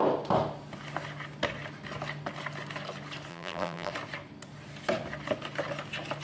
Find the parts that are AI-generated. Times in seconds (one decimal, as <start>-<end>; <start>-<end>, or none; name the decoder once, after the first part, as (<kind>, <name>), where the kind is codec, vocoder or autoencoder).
3.3-3.9 (vocoder, BigVGAN v2)